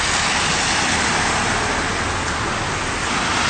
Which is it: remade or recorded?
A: recorded